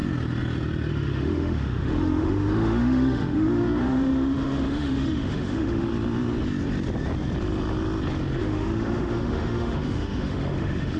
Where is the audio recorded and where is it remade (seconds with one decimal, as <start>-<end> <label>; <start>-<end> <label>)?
0.0-0.9 recorded; 0.9-5.9 remade; 5.9-8.4 recorded; 8.4-11.0 remade